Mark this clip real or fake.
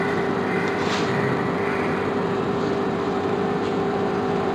fake